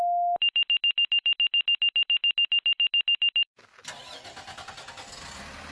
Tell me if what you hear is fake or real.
real